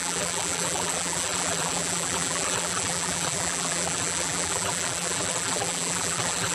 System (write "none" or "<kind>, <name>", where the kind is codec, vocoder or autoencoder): vocoder, BigVGAN v2